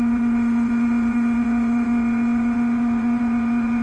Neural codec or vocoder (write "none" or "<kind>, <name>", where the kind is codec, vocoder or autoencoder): vocoder, Vocos